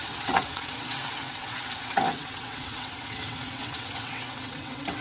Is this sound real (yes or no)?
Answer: no